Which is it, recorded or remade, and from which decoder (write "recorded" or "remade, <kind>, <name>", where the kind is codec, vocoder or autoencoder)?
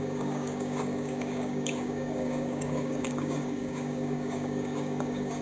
remade, codec, DAC